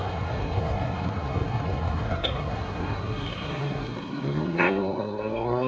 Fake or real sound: fake